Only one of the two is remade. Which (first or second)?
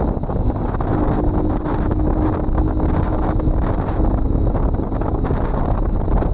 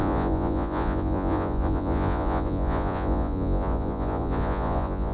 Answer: second